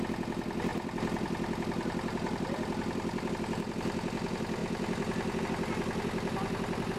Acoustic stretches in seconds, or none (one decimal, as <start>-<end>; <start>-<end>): 0.0-0.7; 3.3-4.6; 5.4-7.0